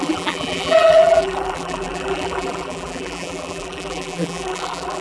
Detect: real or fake fake